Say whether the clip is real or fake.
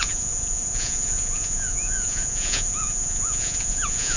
fake